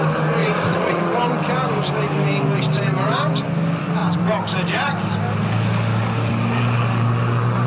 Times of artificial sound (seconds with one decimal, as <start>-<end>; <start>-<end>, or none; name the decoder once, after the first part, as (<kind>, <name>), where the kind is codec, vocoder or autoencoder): 0.4-1.0 (vocoder, Vocos)